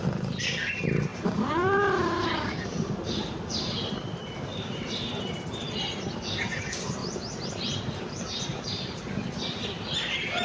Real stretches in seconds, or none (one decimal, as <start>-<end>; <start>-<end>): 0.0-1.1; 3.9-4.5; 5.2-7.0; 7.8-8.5; 9.0-10.4